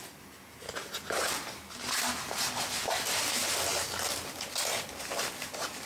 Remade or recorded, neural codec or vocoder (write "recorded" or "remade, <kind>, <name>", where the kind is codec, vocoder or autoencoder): recorded